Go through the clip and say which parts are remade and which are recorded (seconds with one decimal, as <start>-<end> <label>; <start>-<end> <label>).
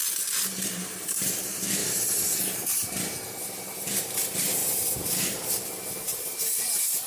0.0-0.6 recorded; 0.6-1.8 remade; 1.8-2.4 recorded; 2.4-7.1 remade